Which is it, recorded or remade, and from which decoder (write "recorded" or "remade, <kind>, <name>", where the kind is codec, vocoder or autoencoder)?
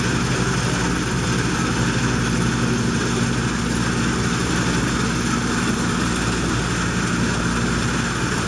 recorded